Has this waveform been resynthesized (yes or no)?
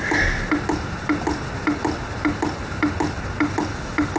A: no